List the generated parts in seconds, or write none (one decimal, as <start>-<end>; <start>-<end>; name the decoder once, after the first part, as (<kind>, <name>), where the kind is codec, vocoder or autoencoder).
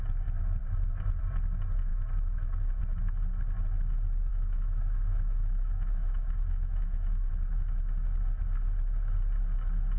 1.9-2.8 (autoencoder, DAC-VAE); 4.3-7.3